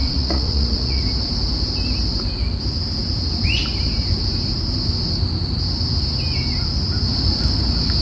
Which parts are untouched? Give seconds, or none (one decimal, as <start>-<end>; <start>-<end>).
1.0-8.0